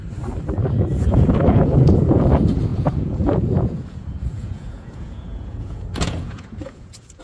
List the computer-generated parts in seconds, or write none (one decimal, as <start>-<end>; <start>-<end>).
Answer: 0.9-2.2; 2.7-7.2